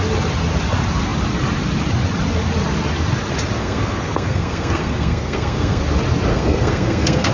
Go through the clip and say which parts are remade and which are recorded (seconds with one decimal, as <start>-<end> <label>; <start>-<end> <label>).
0.0-3.6 recorded; 3.6-5.8 remade; 5.8-6.3 recorded; 6.3-7.3 remade